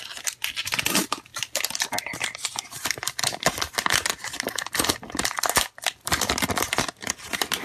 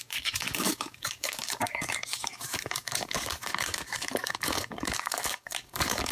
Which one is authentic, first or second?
first